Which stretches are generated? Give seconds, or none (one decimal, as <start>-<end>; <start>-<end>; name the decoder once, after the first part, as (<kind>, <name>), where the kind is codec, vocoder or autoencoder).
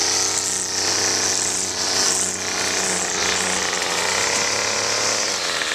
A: none